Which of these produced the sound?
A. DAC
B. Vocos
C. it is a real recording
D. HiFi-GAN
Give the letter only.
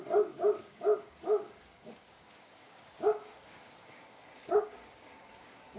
A